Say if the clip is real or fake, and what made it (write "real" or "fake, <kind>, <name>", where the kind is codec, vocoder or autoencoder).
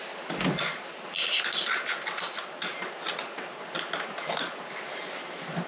real